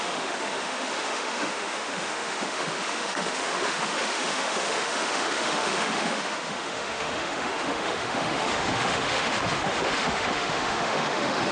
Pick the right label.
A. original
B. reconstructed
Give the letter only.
B